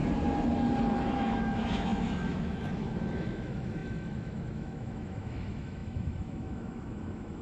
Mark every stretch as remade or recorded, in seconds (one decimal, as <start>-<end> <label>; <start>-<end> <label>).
0.0-1.0 recorded; 1.0-7.4 remade